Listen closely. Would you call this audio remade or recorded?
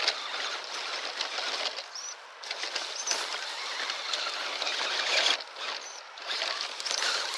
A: recorded